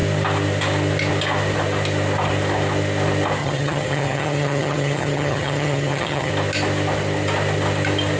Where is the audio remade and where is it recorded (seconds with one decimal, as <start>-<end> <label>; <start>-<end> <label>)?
0.0-3.4 recorded; 3.4-6.3 remade; 6.3-8.2 recorded